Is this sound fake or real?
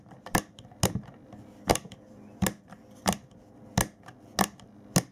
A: real